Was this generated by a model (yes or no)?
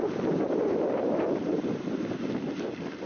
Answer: no